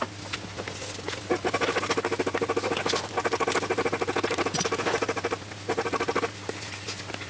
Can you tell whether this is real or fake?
real